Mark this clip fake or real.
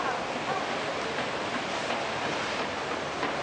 real